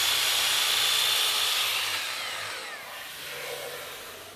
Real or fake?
real